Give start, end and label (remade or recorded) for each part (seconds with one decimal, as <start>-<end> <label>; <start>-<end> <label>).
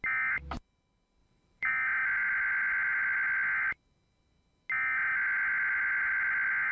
0.0-1.2 recorded; 1.2-1.7 remade; 1.7-6.7 recorded